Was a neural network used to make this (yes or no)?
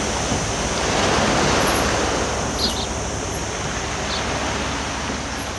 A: no